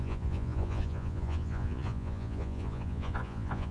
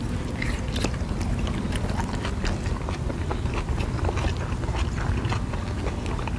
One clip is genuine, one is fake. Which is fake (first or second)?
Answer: first